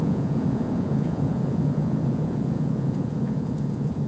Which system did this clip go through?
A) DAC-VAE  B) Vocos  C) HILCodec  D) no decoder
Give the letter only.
B